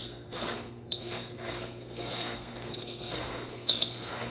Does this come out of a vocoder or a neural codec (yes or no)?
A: yes